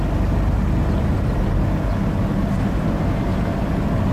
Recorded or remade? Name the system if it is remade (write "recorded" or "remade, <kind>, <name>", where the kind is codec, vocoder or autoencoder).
recorded